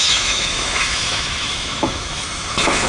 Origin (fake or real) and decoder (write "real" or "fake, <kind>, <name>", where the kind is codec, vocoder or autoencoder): fake, autoencoder, DAC-VAE